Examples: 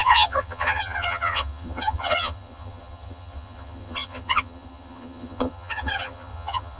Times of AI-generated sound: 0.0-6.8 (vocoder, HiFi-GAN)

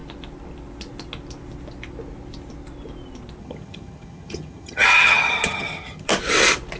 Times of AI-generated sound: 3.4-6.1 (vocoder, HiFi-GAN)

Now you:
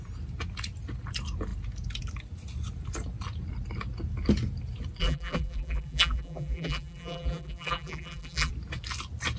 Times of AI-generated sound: 5.0-8.5 (vocoder, BigVGAN v2)

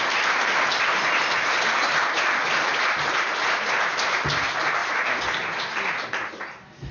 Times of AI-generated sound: none

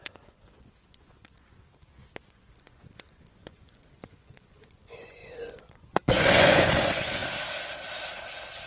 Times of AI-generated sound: 0.0-7.2 (vocoder, Vocos)

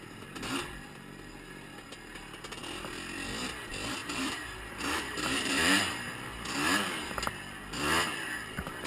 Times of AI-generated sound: 4.0-5.8 (vocoder, BigVGAN v2)